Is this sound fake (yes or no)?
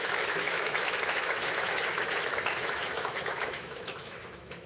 yes